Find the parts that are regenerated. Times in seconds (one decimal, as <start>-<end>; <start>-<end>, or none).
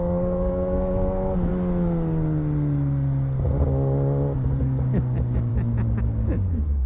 0.0-1.5; 4.6-5.5; 6.0-6.9